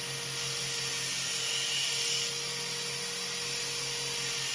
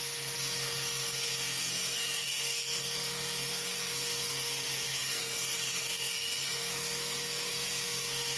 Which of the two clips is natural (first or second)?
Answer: first